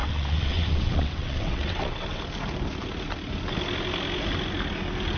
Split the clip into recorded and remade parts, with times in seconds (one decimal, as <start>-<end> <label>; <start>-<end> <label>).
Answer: 0.0-2.2 remade; 2.2-5.2 recorded